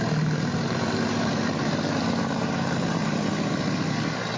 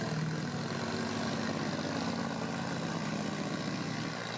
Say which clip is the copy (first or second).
first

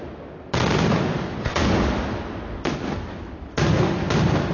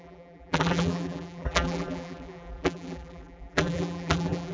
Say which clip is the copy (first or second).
second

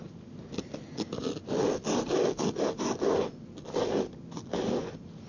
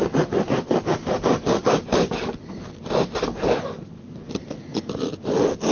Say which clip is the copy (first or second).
second